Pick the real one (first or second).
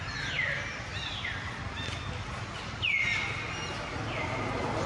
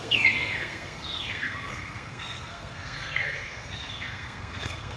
first